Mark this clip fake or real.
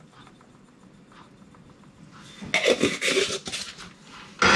real